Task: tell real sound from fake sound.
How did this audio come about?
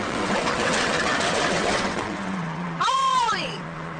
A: fake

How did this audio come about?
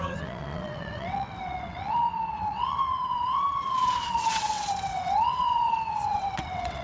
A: fake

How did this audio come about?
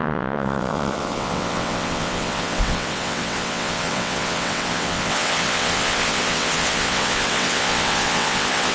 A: fake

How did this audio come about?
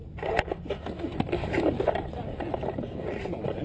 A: real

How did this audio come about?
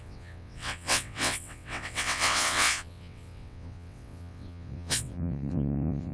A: fake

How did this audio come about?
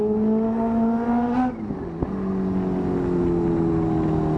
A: real